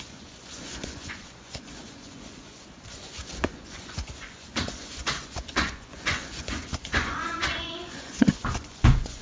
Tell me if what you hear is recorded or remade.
remade